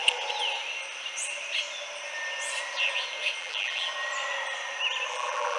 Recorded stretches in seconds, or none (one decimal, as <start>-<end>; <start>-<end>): 0.0-3.4; 3.9-5.1